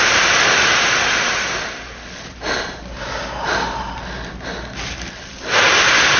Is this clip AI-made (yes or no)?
no